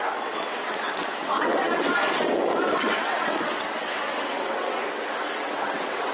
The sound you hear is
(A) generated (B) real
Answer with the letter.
A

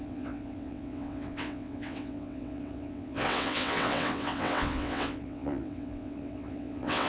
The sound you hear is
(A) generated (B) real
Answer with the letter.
A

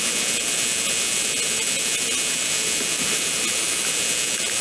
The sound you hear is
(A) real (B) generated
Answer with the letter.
A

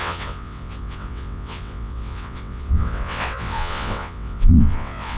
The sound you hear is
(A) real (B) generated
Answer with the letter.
B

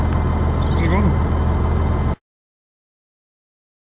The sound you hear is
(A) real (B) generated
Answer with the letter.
A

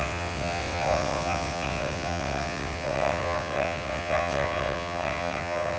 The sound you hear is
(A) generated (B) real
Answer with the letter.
A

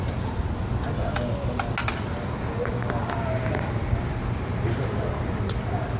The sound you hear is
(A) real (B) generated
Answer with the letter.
A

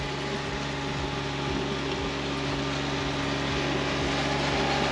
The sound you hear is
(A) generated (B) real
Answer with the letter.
B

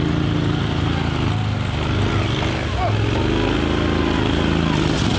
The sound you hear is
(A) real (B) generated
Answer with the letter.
A